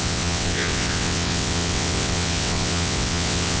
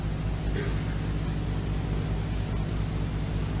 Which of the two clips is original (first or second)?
second